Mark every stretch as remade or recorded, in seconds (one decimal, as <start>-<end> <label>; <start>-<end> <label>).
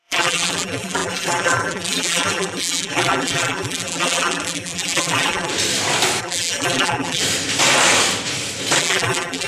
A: 0.0-5.5 remade; 5.5-6.2 recorded; 6.2-7.2 remade; 7.2-8.8 recorded; 8.8-9.5 remade